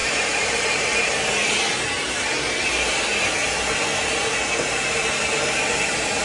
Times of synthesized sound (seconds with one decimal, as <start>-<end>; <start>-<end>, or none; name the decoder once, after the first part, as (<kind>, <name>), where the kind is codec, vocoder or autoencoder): 0.0-1.1 (vocoder, BigVGAN v2)